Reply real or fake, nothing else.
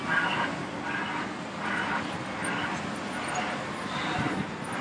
real